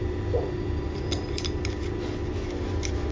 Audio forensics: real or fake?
real